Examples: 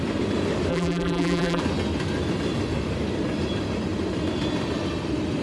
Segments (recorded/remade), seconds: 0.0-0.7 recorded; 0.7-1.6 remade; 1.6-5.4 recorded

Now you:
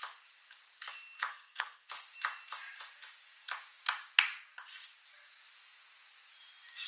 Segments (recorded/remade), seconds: 0.0-1.3 recorded; 1.3-1.9 remade; 1.9-6.9 recorded

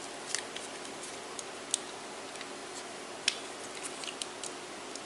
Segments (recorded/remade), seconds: 0.0-5.1 recorded

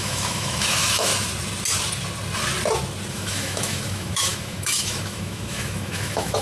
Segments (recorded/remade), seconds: 0.0-1.1 remade; 1.1-3.1 recorded; 3.1-6.4 remade

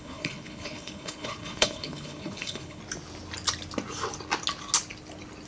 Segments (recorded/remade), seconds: 0.0-2.8 remade; 2.8-5.5 recorded